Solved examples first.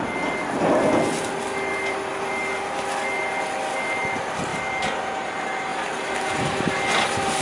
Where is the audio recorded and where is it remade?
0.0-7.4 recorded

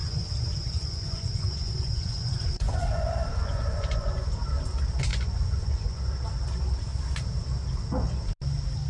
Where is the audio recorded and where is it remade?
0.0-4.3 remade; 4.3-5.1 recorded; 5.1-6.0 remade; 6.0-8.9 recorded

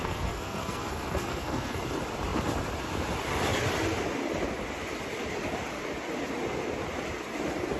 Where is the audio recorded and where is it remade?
0.0-1.8 remade; 1.8-7.8 recorded

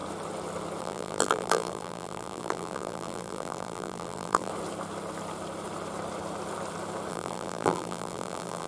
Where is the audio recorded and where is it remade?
0.0-0.8 recorded; 0.8-4.5 remade; 4.5-7.1 recorded; 7.1-8.7 remade

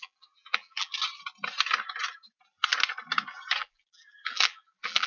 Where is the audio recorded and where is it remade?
0.0-0.9 remade; 0.9-3.6 recorded; 3.6-5.1 remade